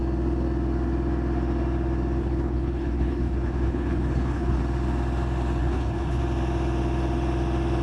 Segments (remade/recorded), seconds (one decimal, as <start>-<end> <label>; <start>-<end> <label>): 0.0-2.2 recorded; 2.2-4.6 remade; 4.6-5.6 recorded; 5.6-6.2 remade; 6.2-7.8 recorded